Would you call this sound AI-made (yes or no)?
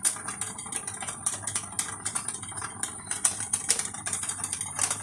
yes